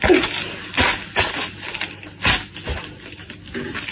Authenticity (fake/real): real